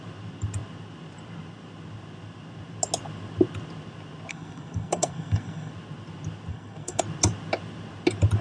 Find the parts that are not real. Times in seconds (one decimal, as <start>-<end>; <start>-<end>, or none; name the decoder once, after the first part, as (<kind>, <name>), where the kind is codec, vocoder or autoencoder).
4.3-5.7 (codec, SNAC); 6.5-7.0